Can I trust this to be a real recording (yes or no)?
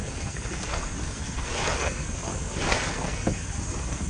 no